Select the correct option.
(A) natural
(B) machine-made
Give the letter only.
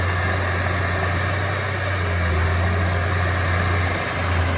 A